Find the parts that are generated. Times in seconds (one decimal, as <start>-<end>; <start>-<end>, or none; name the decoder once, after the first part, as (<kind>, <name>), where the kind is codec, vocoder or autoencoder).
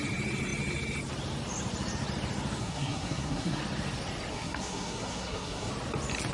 2.6-3.6 (codec, SNAC); 4.3-5.7